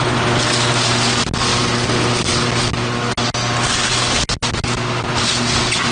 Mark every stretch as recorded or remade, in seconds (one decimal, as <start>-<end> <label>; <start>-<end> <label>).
0.0-5.9 recorded